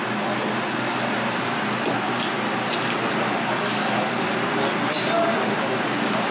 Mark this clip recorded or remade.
recorded